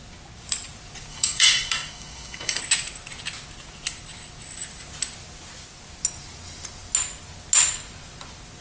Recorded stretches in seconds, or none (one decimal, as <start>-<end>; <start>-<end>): 0.0-1.1; 2.6-8.6